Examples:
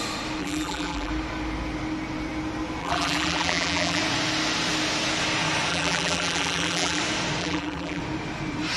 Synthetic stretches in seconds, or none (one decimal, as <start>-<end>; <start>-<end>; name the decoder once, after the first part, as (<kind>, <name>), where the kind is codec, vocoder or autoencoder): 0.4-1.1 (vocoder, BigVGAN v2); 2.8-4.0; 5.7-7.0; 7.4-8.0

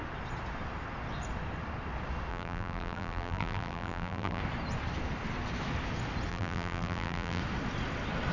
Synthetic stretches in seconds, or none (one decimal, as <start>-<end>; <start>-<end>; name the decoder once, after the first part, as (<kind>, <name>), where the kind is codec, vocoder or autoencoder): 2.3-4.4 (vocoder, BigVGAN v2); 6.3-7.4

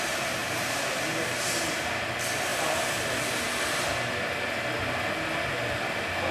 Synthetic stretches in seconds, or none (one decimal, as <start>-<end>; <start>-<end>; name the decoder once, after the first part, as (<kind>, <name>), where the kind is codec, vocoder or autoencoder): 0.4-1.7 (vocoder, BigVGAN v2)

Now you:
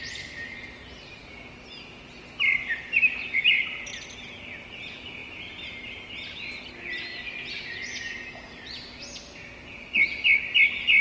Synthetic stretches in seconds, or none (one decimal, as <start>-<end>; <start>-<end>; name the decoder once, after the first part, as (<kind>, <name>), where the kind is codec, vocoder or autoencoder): none

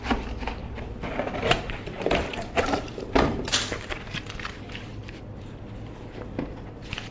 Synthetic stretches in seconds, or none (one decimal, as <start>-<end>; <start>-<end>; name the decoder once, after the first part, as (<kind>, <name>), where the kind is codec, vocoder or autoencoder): 0.6-4.2 (vocoder, BigVGAN v2); 5.0-5.6

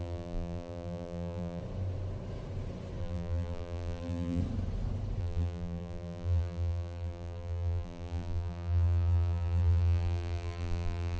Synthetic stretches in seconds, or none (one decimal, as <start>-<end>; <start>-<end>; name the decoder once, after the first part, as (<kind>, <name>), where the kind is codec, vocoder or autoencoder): 0.0-1.6 (vocoder, BigVGAN v2); 3.0-4.4; 5.2-11.2